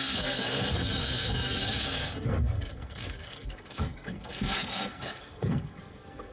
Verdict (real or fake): fake